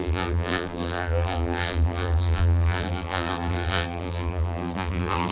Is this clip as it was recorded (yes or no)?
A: no